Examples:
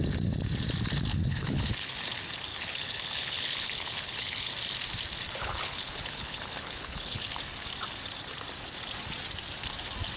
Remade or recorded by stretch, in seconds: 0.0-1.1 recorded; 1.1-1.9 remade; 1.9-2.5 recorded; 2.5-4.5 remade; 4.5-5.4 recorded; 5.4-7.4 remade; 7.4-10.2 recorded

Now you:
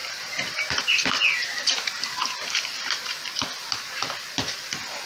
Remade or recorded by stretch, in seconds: 0.0-3.1 remade; 3.1-5.1 recorded

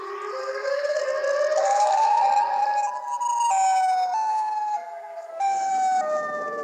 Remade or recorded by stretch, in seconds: 0.0-0.4 recorded; 0.4-1.0 remade; 1.0-1.6 recorded; 1.6-2.2 remade; 2.2-4.3 recorded; 4.3-5.7 remade; 5.7-6.6 recorded

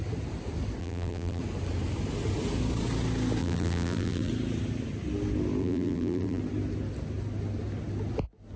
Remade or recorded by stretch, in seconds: 0.0-0.8 recorded; 0.8-1.4 remade; 1.4-3.4 recorded; 3.4-4.3 remade; 4.3-5.6 recorded; 5.6-6.4 remade; 6.4-8.6 recorded

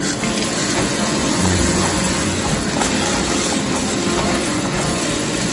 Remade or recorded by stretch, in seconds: 0.0-0.6 recorded; 0.6-2.5 remade; 2.5-4.4 recorded; 4.4-5.5 remade